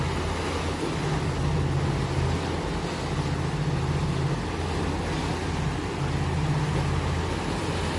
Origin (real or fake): real